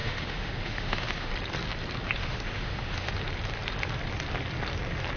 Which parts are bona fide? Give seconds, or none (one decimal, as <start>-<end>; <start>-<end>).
1.3-2.2; 3.1-5.2